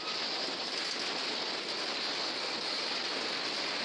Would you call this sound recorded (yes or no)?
yes